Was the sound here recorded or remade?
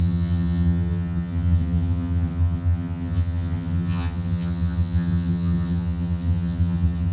remade